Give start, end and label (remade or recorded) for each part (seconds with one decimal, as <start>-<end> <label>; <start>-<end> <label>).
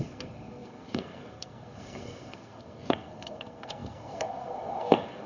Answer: 0.0-5.3 remade